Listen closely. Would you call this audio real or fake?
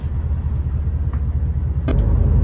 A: real